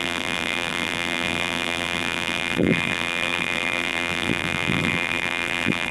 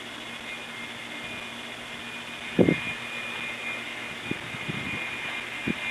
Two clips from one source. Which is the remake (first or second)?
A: first